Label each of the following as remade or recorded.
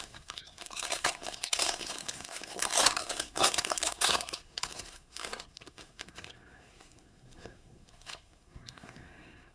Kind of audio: remade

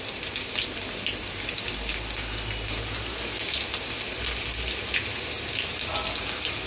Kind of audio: recorded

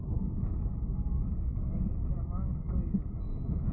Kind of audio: remade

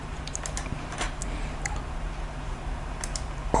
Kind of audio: remade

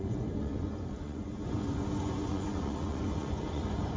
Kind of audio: remade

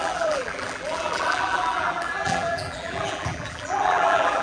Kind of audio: remade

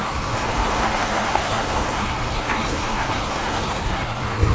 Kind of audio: remade